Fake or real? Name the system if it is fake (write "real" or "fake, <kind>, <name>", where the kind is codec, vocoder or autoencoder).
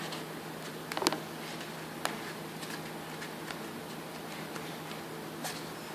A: real